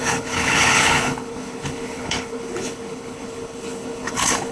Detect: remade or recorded remade